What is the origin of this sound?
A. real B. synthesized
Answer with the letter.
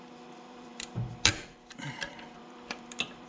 B